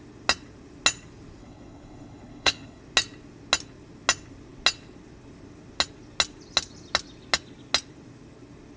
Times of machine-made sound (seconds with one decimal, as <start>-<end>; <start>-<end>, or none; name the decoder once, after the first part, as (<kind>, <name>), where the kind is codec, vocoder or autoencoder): 1.4-2.8 (codec, HILCodec)